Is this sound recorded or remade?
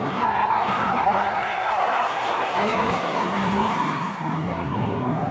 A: remade